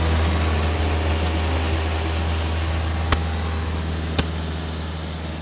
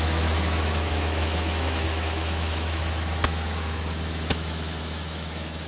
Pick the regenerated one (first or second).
second